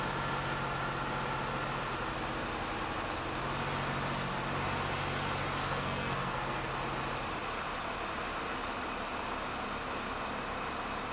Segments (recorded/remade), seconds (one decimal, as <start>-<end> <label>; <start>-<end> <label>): 0.0-5.6 recorded; 5.6-6.7 remade; 6.7-11.1 recorded